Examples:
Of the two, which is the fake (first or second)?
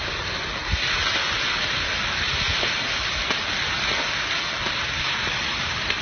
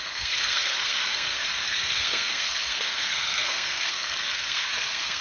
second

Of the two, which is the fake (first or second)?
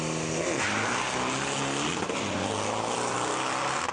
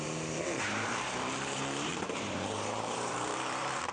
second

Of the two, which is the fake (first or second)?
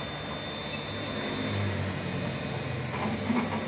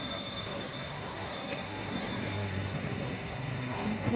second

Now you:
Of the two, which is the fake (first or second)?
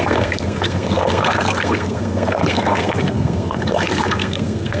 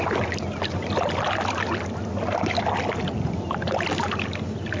first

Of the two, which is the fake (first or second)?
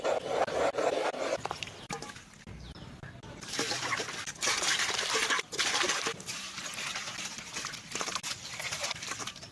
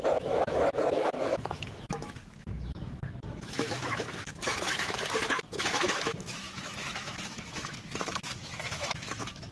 second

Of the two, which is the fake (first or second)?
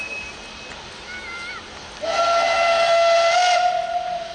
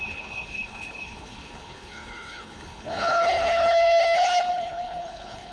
second